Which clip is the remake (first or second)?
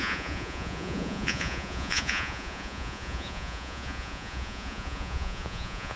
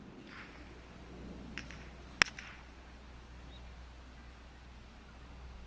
first